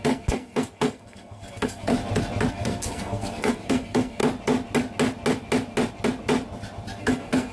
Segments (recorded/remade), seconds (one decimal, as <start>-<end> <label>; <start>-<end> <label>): 0.0-1.9 remade; 1.9-2.5 recorded; 2.5-4.2 remade; 4.2-7.0 recorded; 7.0-7.5 remade